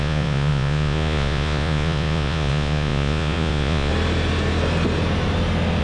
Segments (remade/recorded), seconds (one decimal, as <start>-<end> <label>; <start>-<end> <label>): 0.0-3.9 remade; 3.9-5.8 recorded